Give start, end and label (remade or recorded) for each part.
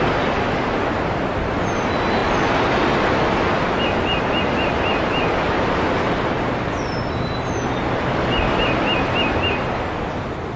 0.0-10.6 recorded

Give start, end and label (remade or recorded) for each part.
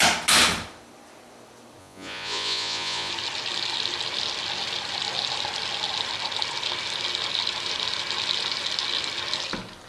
0.0-1.8 recorded; 1.8-3.1 remade; 3.1-9.9 recorded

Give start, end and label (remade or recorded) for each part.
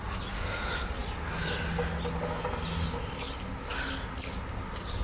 0.0-5.0 recorded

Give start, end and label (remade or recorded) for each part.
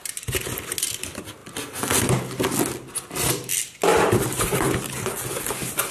0.0-5.9 recorded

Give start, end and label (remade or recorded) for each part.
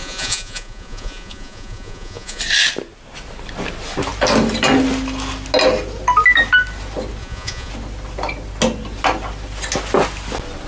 0.0-2.4 remade; 2.4-7.2 recorded; 7.2-7.7 remade; 7.7-10.7 recorded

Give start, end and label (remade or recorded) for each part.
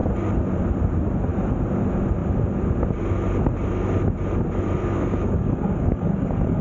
0.0-4.8 recorded; 4.8-6.6 remade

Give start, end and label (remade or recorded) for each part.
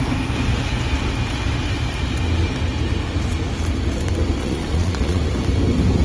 0.0-4.4 recorded; 4.4-5.2 remade; 5.2-6.0 recorded